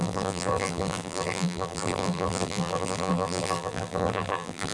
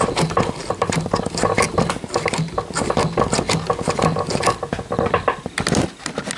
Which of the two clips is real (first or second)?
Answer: second